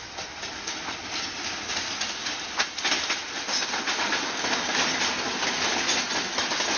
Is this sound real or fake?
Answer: real